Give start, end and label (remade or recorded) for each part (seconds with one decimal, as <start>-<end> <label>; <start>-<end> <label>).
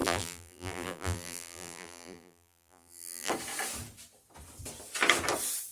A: 0.0-3.3 remade; 3.3-5.7 recorded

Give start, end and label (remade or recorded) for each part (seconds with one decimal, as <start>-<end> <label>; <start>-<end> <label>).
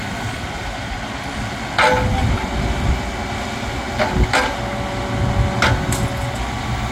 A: 0.0-2.2 recorded; 2.2-2.9 remade; 2.9-6.9 recorded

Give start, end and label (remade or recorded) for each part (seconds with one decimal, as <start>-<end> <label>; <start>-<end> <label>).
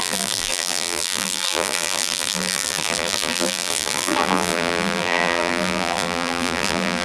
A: 0.0-7.0 remade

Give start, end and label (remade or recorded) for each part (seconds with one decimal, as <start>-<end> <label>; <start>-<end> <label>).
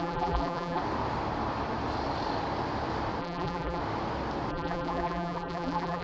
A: 0.0-0.8 remade; 0.8-3.2 recorded; 3.2-3.8 remade; 3.8-4.5 recorded; 4.5-6.0 remade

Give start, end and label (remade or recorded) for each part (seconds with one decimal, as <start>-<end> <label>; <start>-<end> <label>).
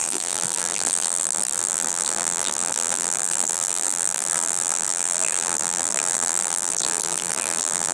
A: 0.0-7.9 remade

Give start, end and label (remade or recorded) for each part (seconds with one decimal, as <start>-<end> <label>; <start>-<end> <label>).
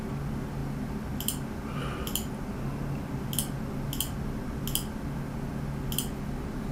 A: 0.0-6.7 recorded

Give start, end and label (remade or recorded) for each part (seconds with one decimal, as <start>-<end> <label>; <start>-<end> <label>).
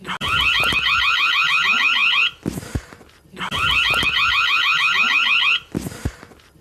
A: 0.0-6.6 recorded